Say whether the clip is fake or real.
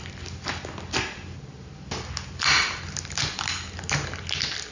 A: real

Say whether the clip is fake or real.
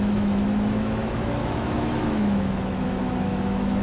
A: fake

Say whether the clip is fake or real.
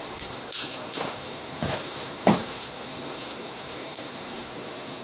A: fake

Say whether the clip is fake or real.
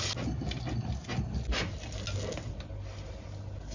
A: real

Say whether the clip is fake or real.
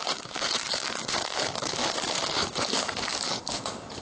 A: fake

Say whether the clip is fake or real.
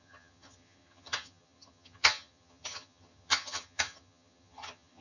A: fake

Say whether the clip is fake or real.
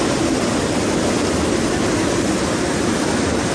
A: real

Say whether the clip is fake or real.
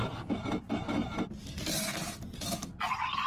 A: real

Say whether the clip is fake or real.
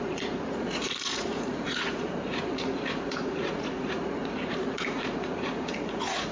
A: fake